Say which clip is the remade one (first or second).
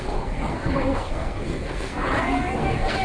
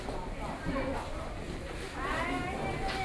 first